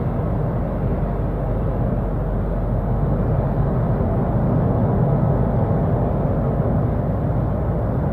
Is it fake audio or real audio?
real